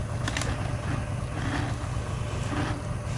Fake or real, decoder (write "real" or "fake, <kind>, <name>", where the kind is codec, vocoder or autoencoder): real